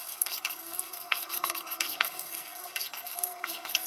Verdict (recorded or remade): remade